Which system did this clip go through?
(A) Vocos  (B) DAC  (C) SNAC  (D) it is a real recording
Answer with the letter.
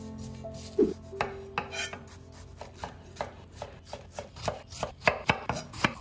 D